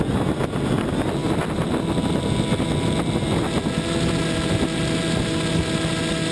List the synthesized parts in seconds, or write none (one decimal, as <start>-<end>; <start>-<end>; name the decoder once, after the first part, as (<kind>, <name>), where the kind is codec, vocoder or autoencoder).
none